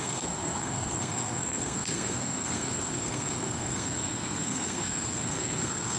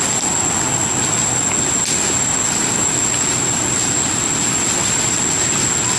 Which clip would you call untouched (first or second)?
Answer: second